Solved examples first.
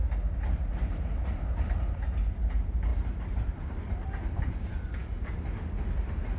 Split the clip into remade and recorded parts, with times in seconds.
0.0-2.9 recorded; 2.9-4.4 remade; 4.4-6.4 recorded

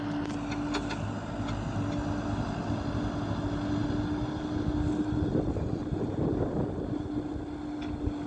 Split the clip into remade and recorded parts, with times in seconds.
0.0-8.3 recorded

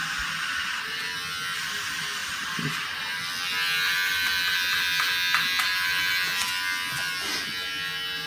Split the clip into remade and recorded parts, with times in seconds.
0.0-8.3 recorded

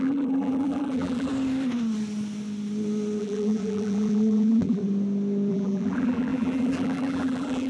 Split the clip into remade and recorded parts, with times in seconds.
0.0-1.3 remade; 1.3-3.2 recorded; 3.2-4.8 remade; 4.8-5.5 recorded; 5.5-7.7 remade

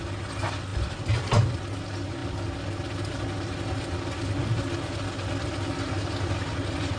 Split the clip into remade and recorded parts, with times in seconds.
0.0-0.7 recorded; 0.7-1.6 remade; 1.6-7.0 recorded

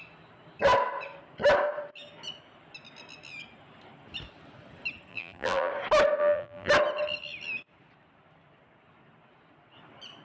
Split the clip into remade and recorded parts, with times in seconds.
0.0-5.1 recorded; 5.1-5.7 remade; 5.7-6.2 recorded; 6.2-6.7 remade; 6.7-10.2 recorded